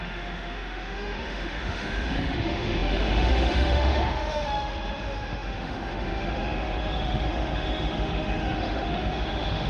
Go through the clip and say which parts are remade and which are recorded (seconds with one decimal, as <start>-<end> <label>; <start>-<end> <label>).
0.0-9.7 remade